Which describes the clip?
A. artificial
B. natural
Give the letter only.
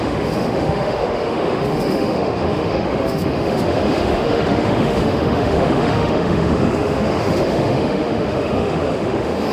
A